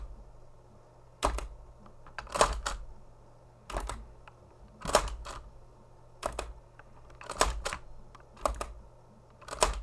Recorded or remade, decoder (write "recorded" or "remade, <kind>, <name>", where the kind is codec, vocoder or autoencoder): recorded